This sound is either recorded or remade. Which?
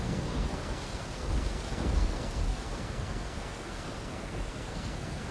remade